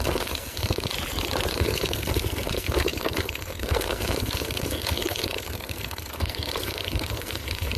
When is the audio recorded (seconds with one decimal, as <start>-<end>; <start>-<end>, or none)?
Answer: 0.9-1.5